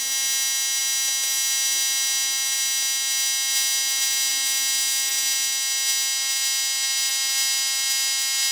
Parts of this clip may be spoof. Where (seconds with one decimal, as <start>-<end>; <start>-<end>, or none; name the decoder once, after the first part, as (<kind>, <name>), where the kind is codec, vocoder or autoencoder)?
none